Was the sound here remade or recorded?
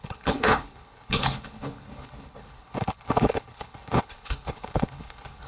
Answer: remade